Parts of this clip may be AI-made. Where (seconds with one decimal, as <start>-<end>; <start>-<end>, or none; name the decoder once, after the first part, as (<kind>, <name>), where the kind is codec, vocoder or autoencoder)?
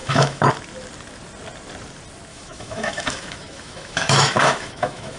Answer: 0.0-0.5 (autoencoder, DAC-VAE); 2.3-5.2